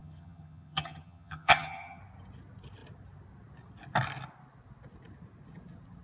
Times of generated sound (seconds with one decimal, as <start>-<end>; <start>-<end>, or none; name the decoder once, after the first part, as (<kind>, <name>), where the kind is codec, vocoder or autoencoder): 0.0-2.0 (vocoder, HiFi-GAN)